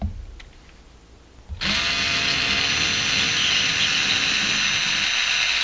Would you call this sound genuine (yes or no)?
yes